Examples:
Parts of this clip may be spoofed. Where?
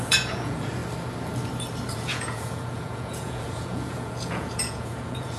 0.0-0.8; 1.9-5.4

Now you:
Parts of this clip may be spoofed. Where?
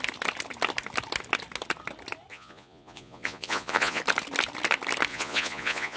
2.3-4.0; 5.1-6.0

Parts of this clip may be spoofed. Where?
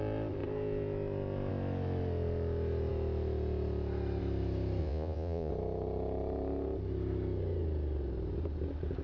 4.8-5.5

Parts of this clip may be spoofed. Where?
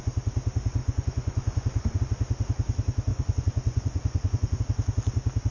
0.8-2.0; 3.1-4.6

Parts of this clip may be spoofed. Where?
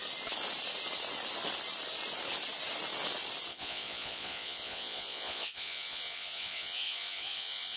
3.5-7.8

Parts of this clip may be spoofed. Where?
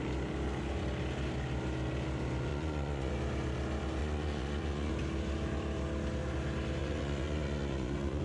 2.5-3.1; 4.0-4.9; 6.8-8.2